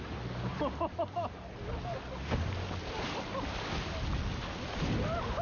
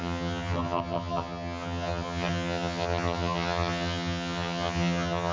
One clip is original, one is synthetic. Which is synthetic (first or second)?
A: second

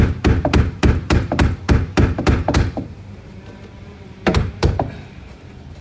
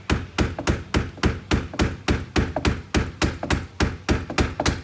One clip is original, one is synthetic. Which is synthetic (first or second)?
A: first